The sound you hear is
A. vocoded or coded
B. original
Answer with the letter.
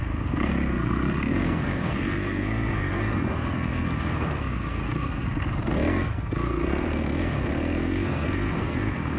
A